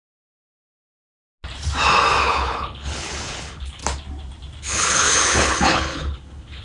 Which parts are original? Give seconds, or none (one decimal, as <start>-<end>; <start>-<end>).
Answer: 0.0-2.2; 3.8-4.6